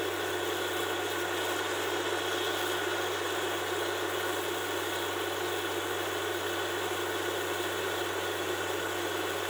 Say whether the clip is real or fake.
real